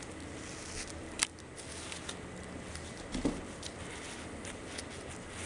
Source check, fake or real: real